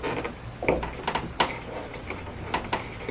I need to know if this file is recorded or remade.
recorded